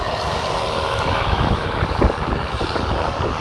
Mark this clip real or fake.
fake